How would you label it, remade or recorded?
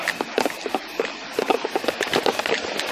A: recorded